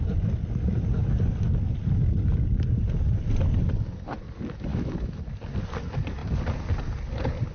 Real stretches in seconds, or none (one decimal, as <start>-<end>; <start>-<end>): 0.0-4.7; 5.2-7.5